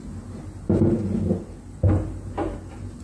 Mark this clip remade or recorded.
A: recorded